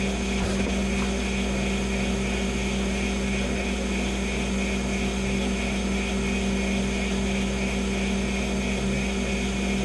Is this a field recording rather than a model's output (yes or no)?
yes